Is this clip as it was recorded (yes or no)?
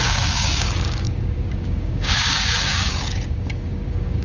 no